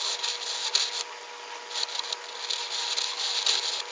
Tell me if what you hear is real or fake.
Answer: real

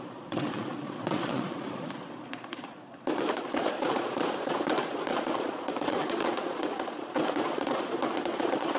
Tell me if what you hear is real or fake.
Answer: fake